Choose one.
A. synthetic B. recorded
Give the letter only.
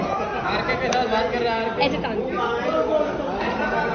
B